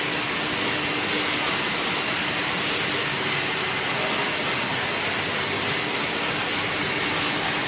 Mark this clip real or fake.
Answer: real